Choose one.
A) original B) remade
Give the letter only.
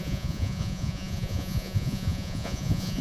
B